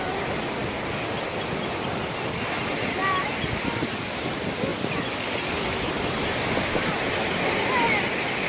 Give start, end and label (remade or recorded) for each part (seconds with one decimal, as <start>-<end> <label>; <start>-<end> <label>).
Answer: 0.0-8.5 recorded